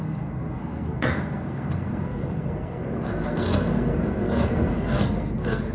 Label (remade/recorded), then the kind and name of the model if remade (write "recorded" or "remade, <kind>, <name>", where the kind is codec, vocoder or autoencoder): remade, codec, SNAC